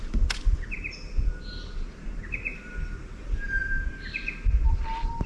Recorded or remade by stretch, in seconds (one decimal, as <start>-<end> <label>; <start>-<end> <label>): 0.0-2.5 recorded; 2.5-3.4 remade; 3.4-5.3 recorded